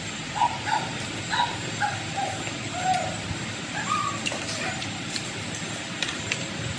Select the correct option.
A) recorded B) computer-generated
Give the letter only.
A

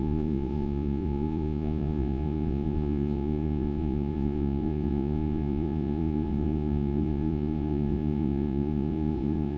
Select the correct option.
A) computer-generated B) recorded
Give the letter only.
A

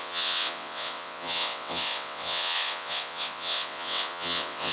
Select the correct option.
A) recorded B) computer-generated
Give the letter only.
B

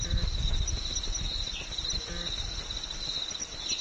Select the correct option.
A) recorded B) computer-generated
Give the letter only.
A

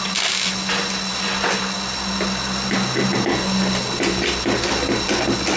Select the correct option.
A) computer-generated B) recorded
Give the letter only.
B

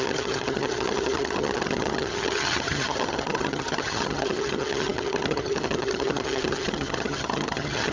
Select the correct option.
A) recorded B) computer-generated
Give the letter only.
B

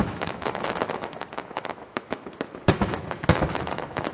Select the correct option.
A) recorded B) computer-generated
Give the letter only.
B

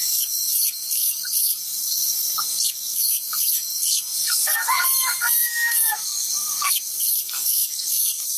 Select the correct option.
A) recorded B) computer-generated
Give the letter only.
B